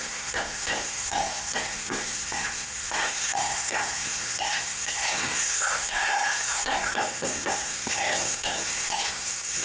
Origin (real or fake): fake